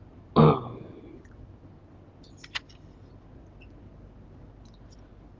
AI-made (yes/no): no